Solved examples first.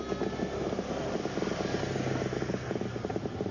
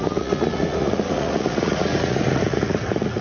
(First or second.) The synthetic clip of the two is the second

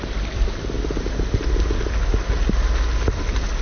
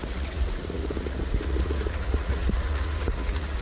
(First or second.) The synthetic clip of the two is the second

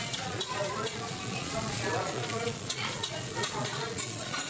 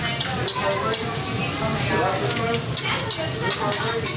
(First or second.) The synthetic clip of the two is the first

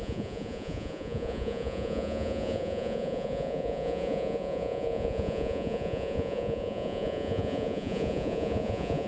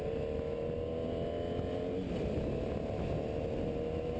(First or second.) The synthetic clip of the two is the first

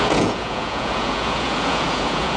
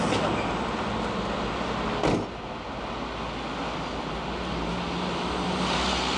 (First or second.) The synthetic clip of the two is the first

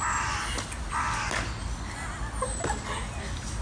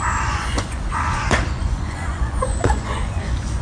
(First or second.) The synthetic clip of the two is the second